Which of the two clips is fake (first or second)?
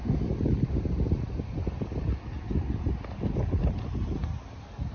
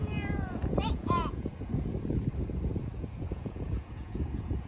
second